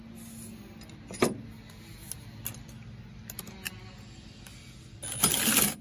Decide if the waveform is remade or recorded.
recorded